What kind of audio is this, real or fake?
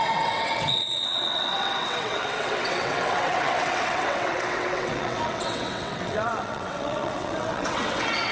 fake